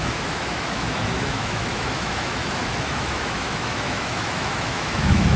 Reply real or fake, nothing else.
fake